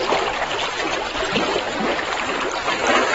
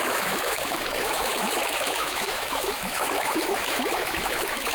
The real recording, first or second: first